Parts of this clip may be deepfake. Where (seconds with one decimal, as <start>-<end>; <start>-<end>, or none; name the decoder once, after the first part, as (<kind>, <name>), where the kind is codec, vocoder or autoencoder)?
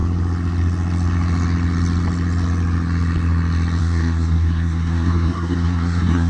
3.8-6.3 (codec, SNAC)